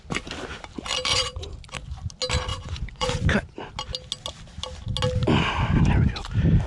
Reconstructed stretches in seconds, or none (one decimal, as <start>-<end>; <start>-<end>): 1.1-1.6; 2.5-3.7